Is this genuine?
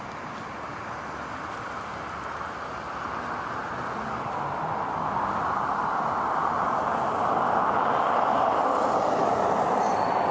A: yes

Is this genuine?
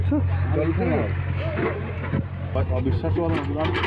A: yes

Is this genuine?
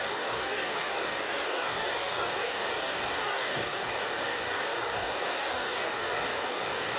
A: no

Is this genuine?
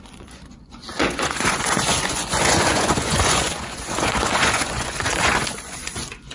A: no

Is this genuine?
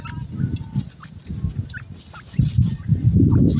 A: yes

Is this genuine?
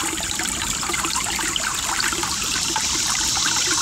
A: yes